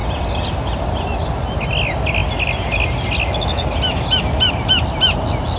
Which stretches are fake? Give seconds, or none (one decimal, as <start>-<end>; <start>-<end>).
none